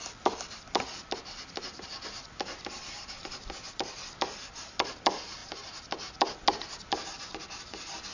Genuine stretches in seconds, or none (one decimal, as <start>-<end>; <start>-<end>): 0.0-8.1